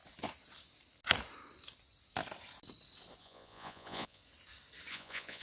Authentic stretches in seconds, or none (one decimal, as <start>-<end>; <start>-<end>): 0.0-3.2; 4.2-4.9